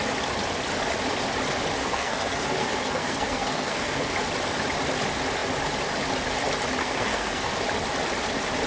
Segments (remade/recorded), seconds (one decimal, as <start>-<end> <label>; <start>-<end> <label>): 0.0-1.8 recorded; 1.8-4.1 remade; 4.1-6.8 recorded; 6.8-7.5 remade; 7.5-8.7 recorded